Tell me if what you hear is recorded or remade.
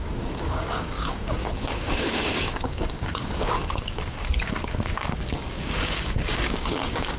remade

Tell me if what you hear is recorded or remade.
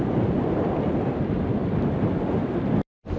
recorded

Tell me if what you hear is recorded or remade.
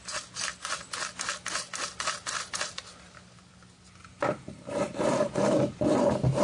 recorded